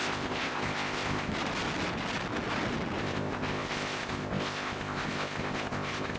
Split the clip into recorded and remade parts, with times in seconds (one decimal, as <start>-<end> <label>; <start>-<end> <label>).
0.0-1.3 remade; 1.3-3.0 recorded; 3.0-6.2 remade